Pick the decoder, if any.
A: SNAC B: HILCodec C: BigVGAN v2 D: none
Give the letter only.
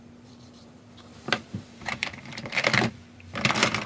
C